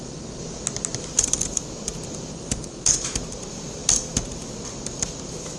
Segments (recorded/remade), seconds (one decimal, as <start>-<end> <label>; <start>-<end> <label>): 0.0-5.6 recorded